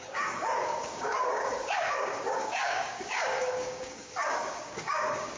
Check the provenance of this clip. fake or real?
fake